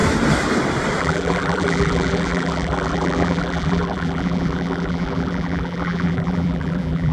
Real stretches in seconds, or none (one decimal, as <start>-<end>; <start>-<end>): 0.0-1.0